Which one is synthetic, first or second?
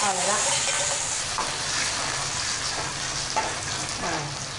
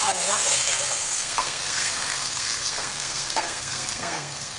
second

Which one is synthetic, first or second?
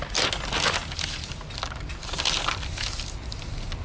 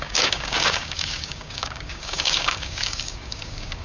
second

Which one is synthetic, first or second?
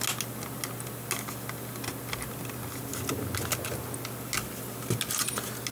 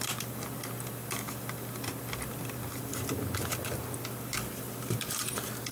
second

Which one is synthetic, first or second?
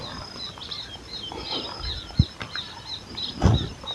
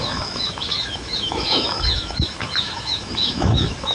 second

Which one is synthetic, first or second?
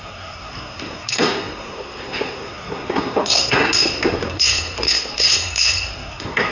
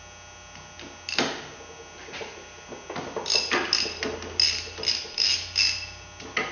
first